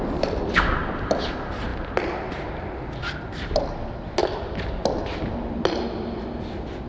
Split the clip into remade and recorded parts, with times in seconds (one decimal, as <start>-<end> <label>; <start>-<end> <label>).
0.0-6.9 recorded